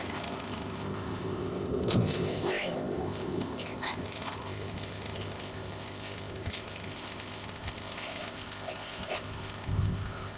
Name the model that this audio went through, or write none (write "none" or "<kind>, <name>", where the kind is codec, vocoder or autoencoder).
codec, ZipCodec